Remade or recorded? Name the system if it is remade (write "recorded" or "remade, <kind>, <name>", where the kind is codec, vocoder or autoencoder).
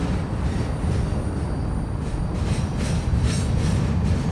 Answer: recorded